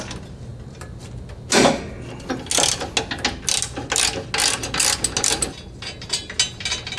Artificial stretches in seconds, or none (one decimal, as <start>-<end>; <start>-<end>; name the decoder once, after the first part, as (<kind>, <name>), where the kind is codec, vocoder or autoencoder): none